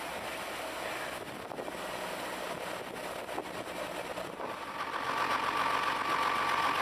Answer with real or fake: real